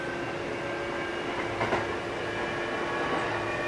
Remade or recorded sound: recorded